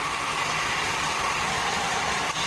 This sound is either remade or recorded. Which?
recorded